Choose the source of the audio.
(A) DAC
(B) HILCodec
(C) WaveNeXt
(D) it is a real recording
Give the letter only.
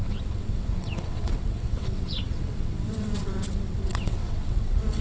C